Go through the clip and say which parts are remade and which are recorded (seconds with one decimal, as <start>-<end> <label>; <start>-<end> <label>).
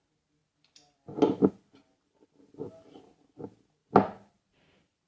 0.0-5.1 recorded